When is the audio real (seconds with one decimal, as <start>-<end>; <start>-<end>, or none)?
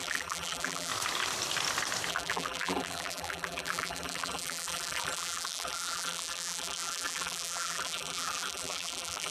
0.9-2.1